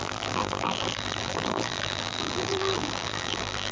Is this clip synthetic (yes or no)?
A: yes